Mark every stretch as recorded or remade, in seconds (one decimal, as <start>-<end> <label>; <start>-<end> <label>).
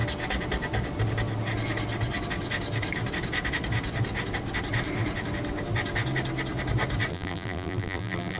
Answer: 0.0-7.1 recorded; 7.1-8.4 remade